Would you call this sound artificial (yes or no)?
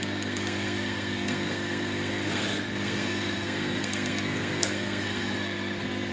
yes